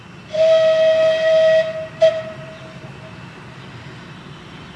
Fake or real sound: real